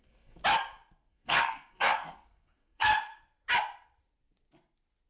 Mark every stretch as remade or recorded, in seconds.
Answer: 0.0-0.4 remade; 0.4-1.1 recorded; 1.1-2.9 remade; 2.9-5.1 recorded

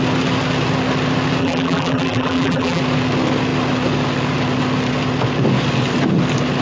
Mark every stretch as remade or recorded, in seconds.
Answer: 0.0-1.4 recorded; 1.4-2.8 remade; 2.8-6.6 recorded

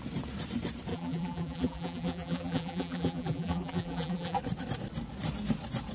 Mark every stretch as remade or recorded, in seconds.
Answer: 0.0-0.9 recorded; 0.9-4.4 remade; 4.4-5.9 recorded